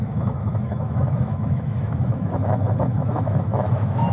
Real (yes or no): no